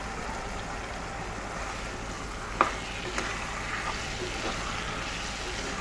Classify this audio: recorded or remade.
recorded